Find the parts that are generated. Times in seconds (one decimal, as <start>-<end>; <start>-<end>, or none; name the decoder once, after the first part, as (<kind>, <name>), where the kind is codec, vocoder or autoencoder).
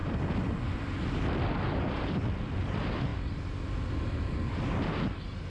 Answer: none